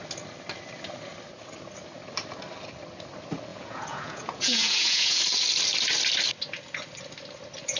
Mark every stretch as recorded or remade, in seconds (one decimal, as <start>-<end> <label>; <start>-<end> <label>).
0.0-3.5 recorded; 3.5-5.2 remade; 5.2-7.8 recorded